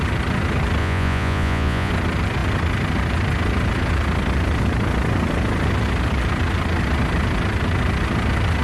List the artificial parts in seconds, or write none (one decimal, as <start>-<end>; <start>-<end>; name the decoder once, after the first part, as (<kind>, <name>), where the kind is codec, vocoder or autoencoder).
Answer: 0.8-1.9 (vocoder, Vocos)

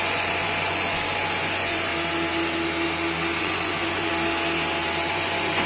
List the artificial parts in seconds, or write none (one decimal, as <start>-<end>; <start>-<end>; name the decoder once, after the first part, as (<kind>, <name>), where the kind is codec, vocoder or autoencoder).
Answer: 0.0-1.9 (vocoder, Vocos); 3.4-4.1; 5.1-5.7